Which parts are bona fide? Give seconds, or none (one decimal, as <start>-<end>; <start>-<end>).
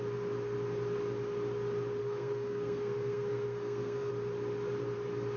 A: 0.0-2.0; 4.1-5.4